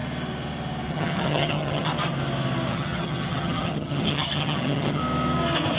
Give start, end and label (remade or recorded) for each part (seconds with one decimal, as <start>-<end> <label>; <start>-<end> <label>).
0.0-0.9 recorded; 0.9-1.9 remade; 1.9-2.7 recorded; 2.7-5.0 remade; 5.0-5.8 recorded